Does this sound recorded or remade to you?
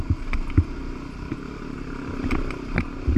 recorded